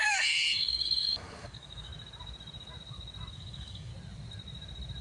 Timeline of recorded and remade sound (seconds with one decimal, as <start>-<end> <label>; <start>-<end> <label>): 0.0-1.9 remade; 1.9-3.3 recorded; 3.3-3.9 remade; 3.9-5.0 recorded